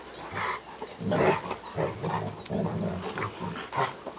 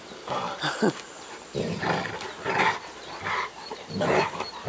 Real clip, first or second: first